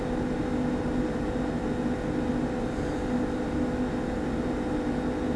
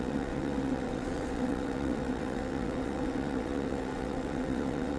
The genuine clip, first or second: first